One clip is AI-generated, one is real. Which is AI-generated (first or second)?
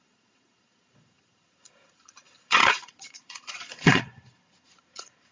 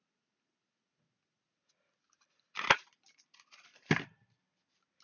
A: first